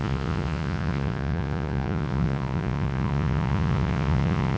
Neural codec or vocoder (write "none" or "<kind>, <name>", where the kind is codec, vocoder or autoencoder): vocoder, Vocos